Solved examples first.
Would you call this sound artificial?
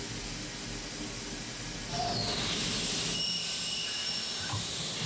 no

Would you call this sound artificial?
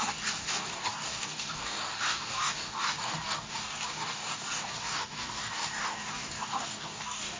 yes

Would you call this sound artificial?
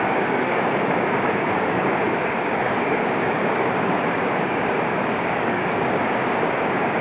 yes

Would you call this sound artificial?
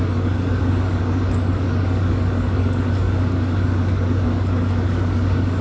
yes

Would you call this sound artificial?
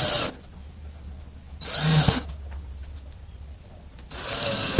no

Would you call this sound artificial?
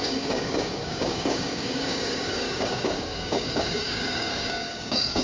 yes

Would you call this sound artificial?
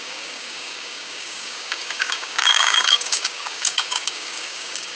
yes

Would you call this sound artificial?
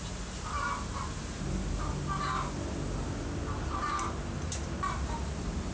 no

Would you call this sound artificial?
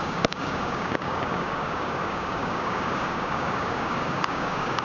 yes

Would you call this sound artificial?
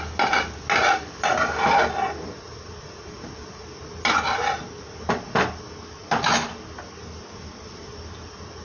no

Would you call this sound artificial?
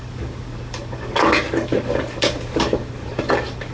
yes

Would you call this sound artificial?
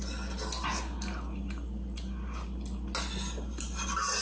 no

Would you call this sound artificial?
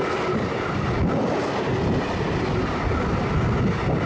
no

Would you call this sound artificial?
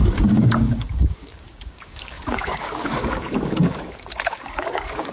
yes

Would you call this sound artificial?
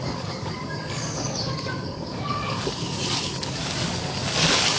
yes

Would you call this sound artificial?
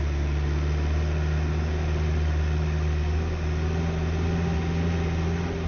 no